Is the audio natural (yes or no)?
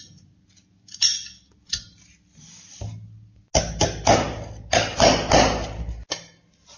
yes